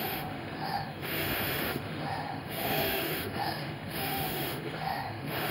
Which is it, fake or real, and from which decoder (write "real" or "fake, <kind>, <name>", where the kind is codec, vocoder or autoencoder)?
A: fake, autoencoder, DAC-VAE